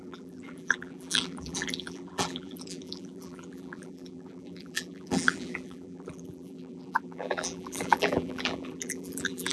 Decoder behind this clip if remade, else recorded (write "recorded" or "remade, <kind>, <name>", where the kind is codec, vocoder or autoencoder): remade, vocoder, BigVGAN v2